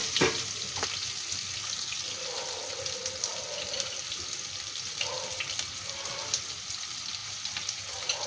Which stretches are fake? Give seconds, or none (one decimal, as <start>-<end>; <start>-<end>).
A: 0.0-0.5; 7.2-7.8